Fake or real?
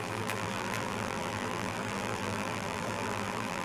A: fake